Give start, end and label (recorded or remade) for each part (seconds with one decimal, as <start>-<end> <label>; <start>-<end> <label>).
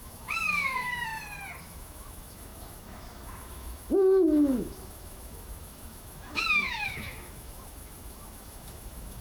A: 0.0-1.1 remade; 1.1-1.6 recorded; 1.6-9.2 remade